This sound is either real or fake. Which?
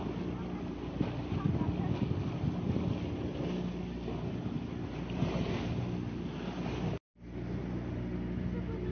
real